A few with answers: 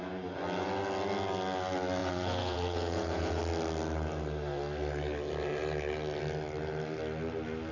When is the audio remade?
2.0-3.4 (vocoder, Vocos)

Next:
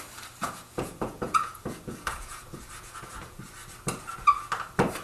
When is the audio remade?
0.4-3.4 (vocoder, Vocos)

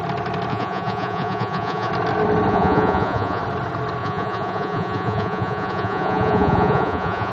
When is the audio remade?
0.5-1.9 (vocoder, Vocos); 2.5-3.4; 4.0-7.3

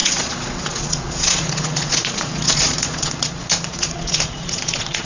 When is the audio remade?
0.0-5.1 (vocoder, Vocos)

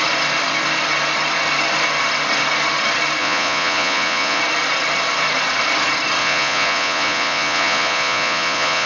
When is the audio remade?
3.2-4.4 (vocoder, Vocos); 6.2-8.9

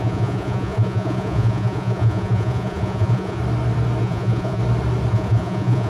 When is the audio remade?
0.0-3.4 (vocoder, Vocos); 4.0-4.6; 5.1-5.9

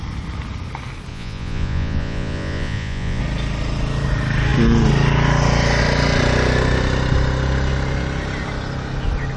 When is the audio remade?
1.1-3.2 (vocoder, Vocos)